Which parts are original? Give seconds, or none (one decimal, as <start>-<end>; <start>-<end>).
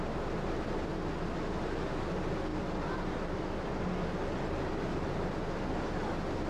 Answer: 0.0-6.5